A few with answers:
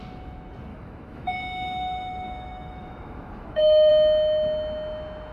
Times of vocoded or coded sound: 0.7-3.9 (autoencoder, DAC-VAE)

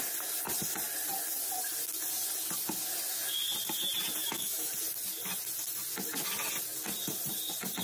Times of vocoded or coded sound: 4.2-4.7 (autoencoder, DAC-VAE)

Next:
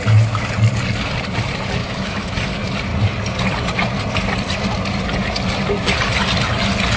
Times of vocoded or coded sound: 1.8-2.3 (autoencoder, DAC-VAE)